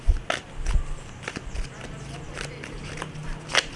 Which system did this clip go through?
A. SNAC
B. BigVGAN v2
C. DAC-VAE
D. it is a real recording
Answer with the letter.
D